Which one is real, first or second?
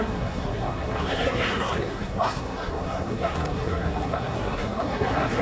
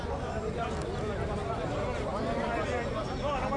second